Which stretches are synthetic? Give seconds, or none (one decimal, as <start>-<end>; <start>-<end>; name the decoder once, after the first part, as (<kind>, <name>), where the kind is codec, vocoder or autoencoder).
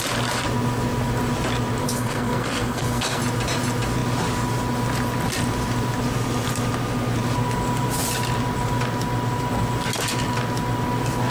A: 1.8-3.2 (codec, SNAC)